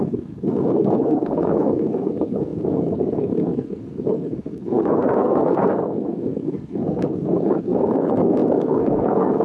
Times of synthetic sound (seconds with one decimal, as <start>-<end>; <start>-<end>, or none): 0.0-9.4